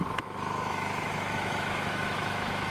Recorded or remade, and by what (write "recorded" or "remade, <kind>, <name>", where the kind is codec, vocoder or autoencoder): remade, autoencoder, DAC-VAE